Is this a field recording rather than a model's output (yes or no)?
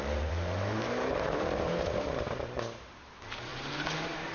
no